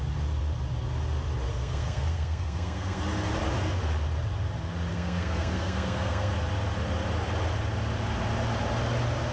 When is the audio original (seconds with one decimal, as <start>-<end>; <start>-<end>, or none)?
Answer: 0.0-1.5; 3.0-4.9; 6.3-9.3